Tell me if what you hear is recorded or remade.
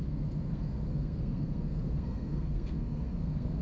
remade